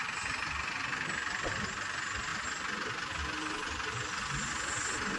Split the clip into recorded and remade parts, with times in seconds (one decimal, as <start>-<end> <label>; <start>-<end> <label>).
0.0-5.2 recorded